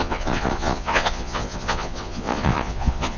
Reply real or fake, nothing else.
fake